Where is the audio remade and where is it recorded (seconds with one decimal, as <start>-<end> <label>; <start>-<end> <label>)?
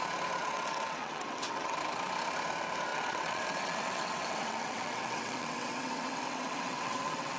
0.0-0.4 recorded; 0.4-1.8 remade; 1.8-2.9 recorded; 2.9-7.4 remade